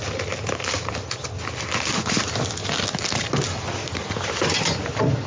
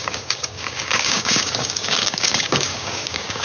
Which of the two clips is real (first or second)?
first